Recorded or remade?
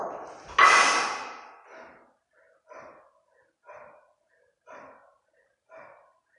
recorded